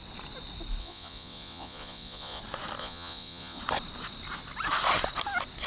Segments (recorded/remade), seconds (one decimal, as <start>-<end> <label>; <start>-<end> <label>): 0.0-0.8 recorded; 0.8-2.4 remade; 2.4-2.8 recorded; 2.8-3.6 remade; 3.6-5.7 recorded